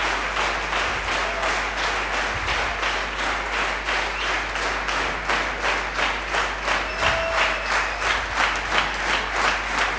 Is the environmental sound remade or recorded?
recorded